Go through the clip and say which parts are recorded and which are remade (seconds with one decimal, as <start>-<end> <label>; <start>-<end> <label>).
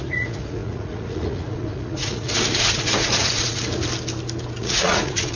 0.0-3.6 remade; 3.6-4.6 recorded; 4.6-5.4 remade